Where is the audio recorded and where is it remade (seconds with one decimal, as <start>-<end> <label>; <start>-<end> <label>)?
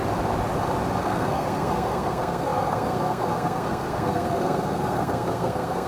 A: 0.0-1.0 recorded; 1.0-5.9 remade